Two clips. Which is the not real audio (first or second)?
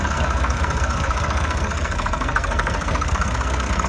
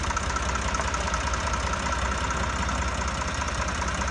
first